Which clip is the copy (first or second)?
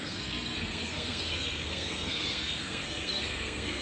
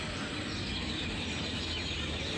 first